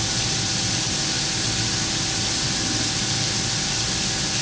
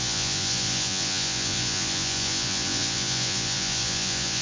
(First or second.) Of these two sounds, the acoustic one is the first